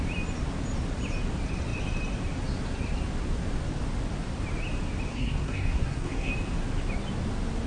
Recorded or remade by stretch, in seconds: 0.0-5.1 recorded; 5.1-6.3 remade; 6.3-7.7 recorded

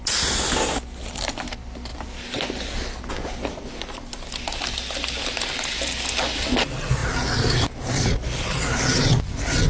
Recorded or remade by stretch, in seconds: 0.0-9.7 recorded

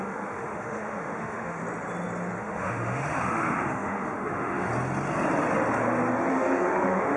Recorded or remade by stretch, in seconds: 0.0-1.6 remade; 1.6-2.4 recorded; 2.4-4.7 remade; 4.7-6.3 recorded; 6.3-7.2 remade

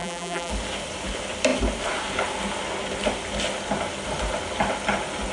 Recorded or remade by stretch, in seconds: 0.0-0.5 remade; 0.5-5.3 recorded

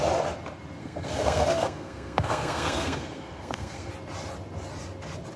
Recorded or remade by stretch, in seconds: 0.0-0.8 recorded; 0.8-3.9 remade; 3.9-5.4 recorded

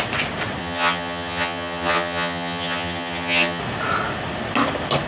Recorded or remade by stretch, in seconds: 0.0-0.6 recorded; 0.6-3.6 remade; 3.6-5.1 recorded

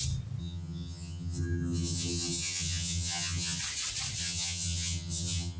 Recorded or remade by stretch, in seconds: 0.0-0.4 recorded; 0.4-3.6 remade; 3.6-4.2 recorded; 4.2-5.6 remade